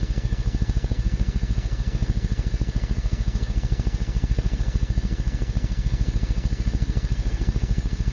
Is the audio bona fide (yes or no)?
no